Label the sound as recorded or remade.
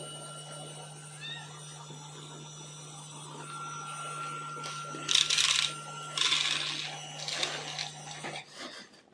recorded